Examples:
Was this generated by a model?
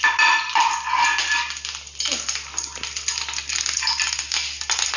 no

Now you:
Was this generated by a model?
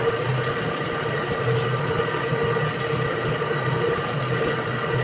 no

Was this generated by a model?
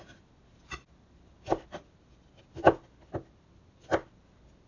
no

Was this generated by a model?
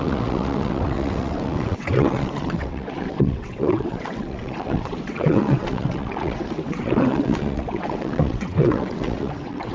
yes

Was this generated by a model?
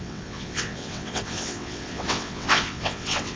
yes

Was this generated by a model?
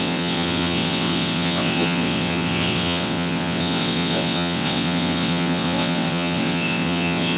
yes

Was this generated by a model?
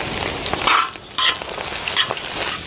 no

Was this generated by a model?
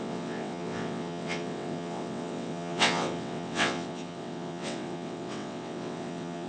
yes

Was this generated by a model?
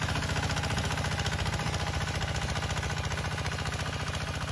no